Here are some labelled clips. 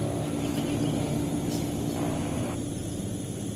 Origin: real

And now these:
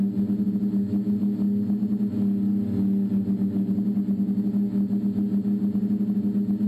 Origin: real